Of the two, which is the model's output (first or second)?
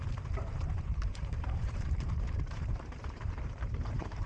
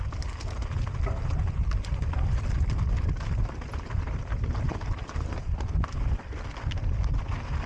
first